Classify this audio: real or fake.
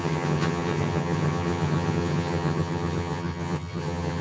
fake